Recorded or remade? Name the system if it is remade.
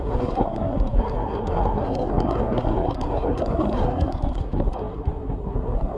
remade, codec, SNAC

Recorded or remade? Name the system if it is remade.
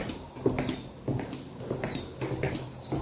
recorded